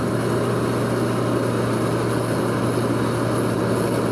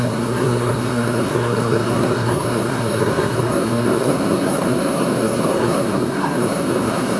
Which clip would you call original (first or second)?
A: first